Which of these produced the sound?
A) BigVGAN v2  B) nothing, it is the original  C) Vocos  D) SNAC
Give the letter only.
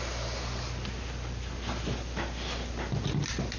B